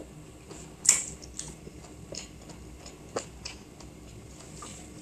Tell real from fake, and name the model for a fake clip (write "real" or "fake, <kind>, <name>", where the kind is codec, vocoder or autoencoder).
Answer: real